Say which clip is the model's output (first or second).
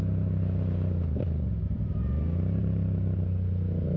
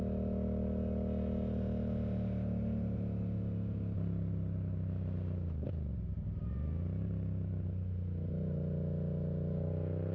first